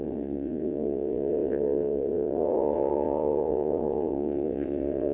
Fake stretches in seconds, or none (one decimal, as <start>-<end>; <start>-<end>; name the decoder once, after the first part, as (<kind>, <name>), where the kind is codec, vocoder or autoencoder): 0.0-5.1 (vocoder, WaveNeXt)